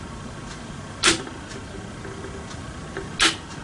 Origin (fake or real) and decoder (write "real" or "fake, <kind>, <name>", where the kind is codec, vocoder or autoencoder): real